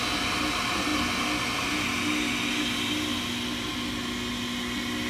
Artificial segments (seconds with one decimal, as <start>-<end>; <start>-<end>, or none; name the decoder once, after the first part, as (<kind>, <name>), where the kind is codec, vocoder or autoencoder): none

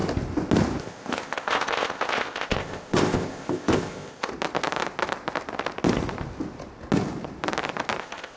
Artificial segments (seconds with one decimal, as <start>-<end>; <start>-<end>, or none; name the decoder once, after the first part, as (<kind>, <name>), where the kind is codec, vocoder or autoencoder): 0.8-4.3 (codec, ZipCodec); 8.0-8.4

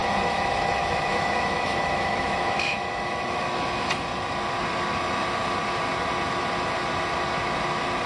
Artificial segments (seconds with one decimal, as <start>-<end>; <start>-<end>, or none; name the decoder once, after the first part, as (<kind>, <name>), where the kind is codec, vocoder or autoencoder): 0.0-3.9 (autoencoder, DAC-VAE)

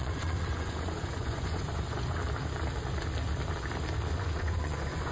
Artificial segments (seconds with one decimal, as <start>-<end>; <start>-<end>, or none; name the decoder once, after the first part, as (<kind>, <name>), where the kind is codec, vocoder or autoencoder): 0.0-2.2 (vocoder, Vocos); 4.2-5.1

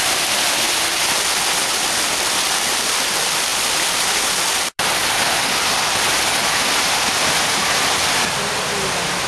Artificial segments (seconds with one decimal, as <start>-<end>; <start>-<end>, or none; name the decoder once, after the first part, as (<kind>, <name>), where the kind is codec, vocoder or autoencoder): none